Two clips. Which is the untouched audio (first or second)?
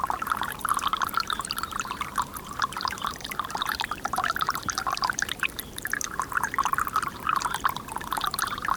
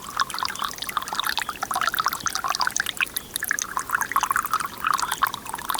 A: second